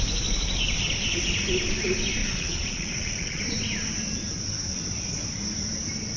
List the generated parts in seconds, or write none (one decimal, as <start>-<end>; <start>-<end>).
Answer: 2.2-3.4